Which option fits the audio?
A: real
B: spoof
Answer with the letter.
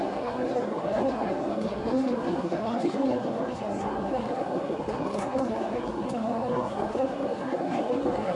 B